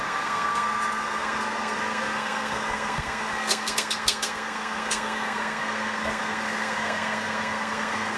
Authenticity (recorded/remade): remade